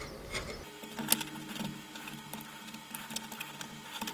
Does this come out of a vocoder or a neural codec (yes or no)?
no